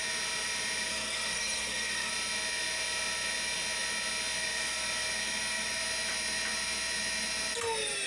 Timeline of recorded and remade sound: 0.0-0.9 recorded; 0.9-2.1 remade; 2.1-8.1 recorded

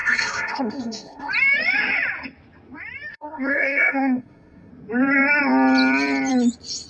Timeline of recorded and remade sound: 0.0-1.3 remade; 1.3-3.1 recorded; 3.1-4.7 remade; 4.7-6.9 recorded

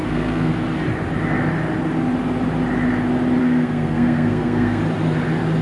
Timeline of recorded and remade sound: 0.0-0.5 remade; 0.5-3.4 recorded; 3.4-4.8 remade; 4.8-5.6 recorded

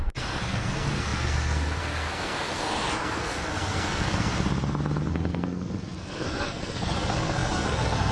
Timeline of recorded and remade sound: 0.0-4.3 remade; 4.3-5.1 recorded; 5.1-8.1 remade

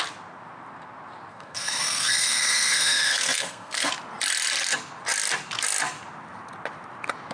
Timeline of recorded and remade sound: 0.0-1.3 recorded; 1.3-3.9 remade; 3.9-7.3 recorded